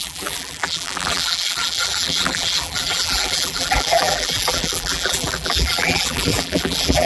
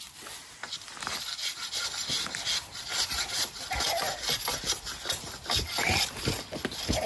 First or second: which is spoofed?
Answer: first